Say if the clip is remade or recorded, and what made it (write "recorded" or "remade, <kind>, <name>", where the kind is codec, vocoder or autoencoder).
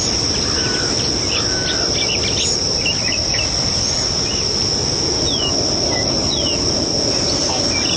recorded